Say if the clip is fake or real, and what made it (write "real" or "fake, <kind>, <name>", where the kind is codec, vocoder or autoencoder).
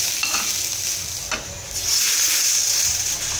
real